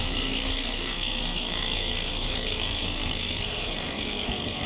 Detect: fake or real fake